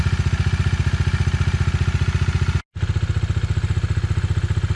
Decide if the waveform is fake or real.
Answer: real